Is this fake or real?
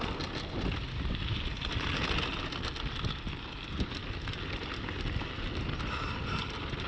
real